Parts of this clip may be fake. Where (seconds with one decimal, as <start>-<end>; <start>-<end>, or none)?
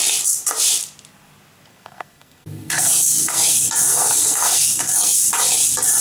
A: 1.7-5.3